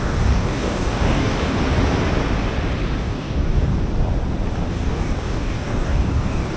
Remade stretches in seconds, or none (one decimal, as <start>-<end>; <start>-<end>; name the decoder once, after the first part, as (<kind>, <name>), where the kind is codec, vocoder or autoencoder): 0.0-1.6 (codec, DAC); 3.0-3.7; 4.7-6.6